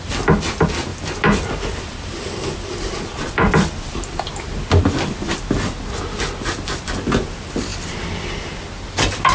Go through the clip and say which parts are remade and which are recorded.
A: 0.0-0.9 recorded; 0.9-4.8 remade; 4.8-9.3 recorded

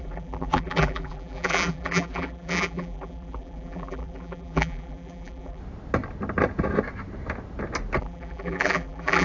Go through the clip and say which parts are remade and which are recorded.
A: 0.0-5.6 remade; 5.6-8.0 recorded; 8.0-9.2 remade

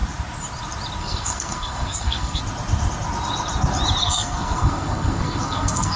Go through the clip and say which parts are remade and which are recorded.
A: 0.0-1.0 recorded; 1.0-2.4 remade; 2.4-4.0 recorded; 4.0-6.0 remade

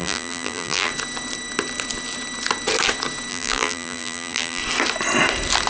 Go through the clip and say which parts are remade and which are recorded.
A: 0.0-0.9 remade; 0.9-3.3 recorded; 3.3-4.6 remade; 4.6-5.7 recorded